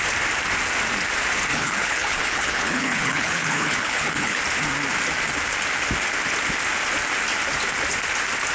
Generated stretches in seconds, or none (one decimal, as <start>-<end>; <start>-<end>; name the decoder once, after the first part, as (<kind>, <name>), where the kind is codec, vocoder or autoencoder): 1.5-4.4 (codec, HILCodec)

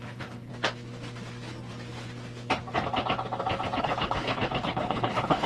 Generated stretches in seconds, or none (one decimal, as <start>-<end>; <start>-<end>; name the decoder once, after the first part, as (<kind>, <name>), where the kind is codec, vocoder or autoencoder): 0.0-0.5 (codec, HILCodec); 3.8-5.5

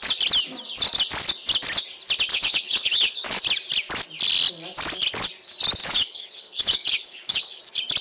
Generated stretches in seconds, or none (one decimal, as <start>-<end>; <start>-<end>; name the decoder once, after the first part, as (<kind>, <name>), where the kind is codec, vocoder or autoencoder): 2.3-3.4 (codec, HILCodec); 5.8-7.6

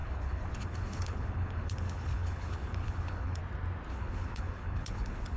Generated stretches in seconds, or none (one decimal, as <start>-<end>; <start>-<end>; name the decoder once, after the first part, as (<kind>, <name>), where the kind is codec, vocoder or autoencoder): 0.0-3.4 (codec, HILCodec); 3.9-5.4

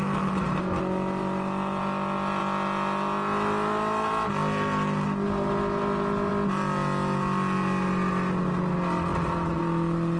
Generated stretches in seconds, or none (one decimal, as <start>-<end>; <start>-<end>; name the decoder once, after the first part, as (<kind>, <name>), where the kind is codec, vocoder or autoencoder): none

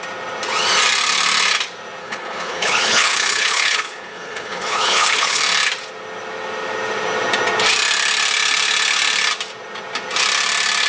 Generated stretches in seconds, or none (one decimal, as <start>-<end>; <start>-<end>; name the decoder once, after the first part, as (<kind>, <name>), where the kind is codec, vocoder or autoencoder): 2.0-5.4 (codec, HILCodec)